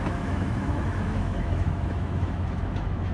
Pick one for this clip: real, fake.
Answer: fake